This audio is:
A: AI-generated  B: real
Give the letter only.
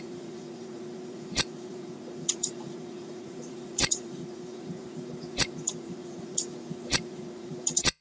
A